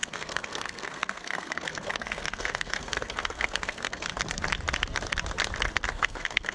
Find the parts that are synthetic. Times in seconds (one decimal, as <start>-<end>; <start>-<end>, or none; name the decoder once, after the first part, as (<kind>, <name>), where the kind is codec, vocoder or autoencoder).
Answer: 0.0-4.1 (codec, SNAC); 5.9-6.5